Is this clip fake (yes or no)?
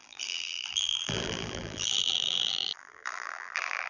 yes